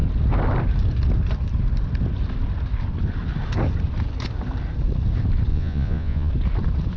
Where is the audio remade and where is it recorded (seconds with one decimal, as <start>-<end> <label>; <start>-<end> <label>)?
0.0-5.5 recorded; 5.5-6.3 remade; 6.3-7.0 recorded